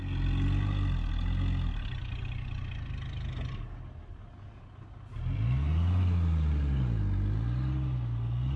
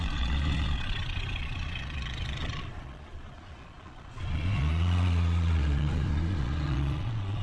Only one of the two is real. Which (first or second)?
first